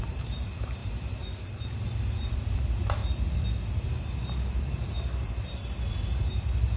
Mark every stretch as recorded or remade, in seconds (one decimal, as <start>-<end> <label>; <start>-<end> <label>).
0.0-3.0 remade; 3.0-4.6 recorded; 4.6-6.8 remade